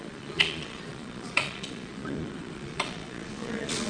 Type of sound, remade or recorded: remade